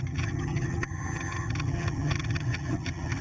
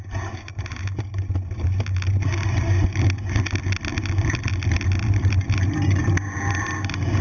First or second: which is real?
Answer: second